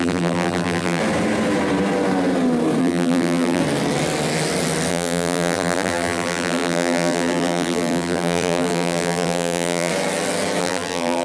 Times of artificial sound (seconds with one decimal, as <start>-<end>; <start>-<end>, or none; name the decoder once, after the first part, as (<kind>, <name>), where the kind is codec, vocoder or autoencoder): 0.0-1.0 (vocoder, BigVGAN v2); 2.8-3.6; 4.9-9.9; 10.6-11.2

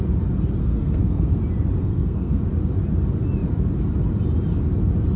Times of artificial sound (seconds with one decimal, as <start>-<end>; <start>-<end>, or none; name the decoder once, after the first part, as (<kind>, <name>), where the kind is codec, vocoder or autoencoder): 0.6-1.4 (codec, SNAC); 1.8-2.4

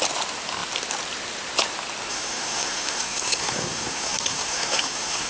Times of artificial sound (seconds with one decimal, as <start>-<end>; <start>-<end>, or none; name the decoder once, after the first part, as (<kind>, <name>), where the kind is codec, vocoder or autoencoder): 2.1-5.3 (codec, SNAC)

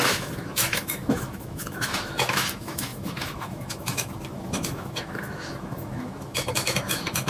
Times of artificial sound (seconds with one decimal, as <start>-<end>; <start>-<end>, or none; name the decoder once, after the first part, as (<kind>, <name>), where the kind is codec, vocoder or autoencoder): 0.0-7.3 (autoencoder, DAC-VAE)